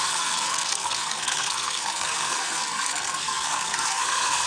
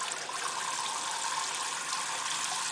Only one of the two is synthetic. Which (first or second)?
first